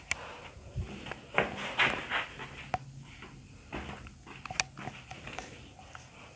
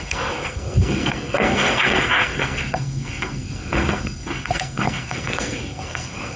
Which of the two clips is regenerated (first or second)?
second